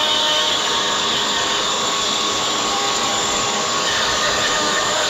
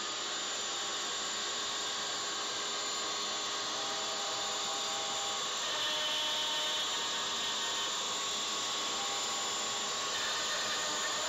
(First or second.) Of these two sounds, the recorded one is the second